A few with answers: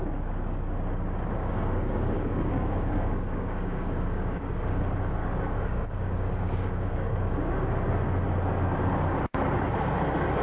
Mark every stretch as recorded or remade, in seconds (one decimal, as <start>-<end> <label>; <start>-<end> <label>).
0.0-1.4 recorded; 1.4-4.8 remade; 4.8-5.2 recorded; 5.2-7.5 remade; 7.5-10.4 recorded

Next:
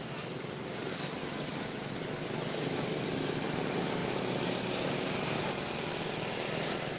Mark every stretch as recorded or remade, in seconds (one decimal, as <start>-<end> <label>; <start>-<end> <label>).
0.0-1.2 recorded; 1.2-1.9 remade; 1.9-7.0 recorded

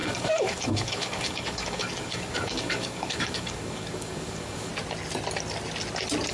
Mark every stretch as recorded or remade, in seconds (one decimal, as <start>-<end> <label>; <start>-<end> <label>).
0.0-4.7 remade; 4.7-6.3 recorded